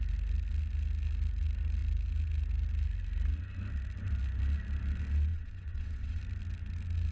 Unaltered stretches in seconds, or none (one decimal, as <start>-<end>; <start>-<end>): 0.0-5.3; 6.2-7.1